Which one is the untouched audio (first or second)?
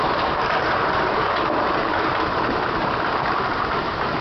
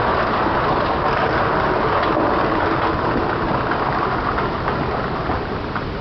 second